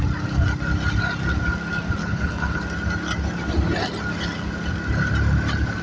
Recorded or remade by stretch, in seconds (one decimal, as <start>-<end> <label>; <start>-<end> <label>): 0.0-2.0 recorded; 2.0-2.6 remade; 2.6-5.8 recorded